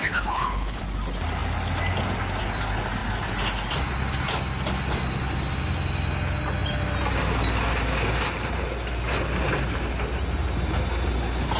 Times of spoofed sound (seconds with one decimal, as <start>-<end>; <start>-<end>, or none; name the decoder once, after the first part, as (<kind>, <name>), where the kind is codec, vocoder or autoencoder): 0.0-0.8 (codec, HILCodec)